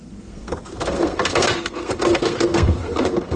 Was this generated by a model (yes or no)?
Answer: yes